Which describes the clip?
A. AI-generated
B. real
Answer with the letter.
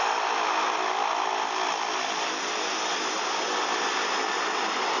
B